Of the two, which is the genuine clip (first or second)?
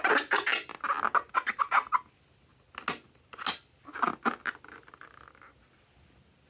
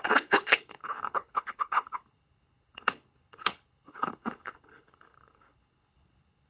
first